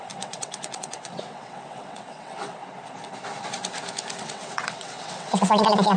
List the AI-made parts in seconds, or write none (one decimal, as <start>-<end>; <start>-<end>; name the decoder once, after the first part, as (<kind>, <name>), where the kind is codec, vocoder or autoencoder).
0.0-2.6 (vocoder, WaveNeXt); 4.2-6.0